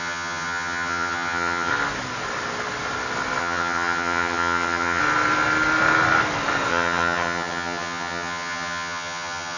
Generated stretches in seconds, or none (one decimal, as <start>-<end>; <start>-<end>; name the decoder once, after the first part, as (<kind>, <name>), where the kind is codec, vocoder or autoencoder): 0.0-1.7 (vocoder, HiFi-GAN); 3.4-5.0; 6.7-9.6